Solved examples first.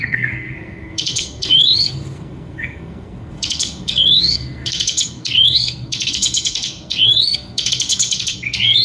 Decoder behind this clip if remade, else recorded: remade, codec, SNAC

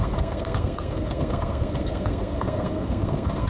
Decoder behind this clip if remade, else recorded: remade, codec, SNAC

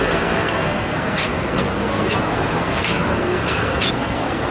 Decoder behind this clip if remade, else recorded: remade, codec, SNAC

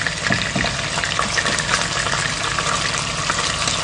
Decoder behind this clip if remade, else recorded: recorded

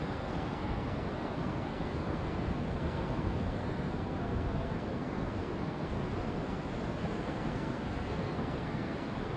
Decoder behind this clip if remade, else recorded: remade, codec, SNAC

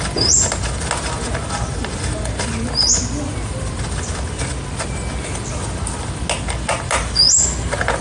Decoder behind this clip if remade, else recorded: recorded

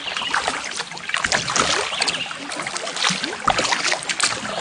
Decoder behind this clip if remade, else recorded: recorded